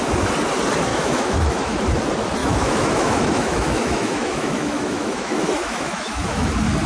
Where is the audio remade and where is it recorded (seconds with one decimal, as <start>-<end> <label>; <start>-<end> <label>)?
0.0-0.9 recorded; 0.9-1.8 remade; 1.8-2.4 recorded; 2.4-6.5 remade; 6.5-6.9 recorded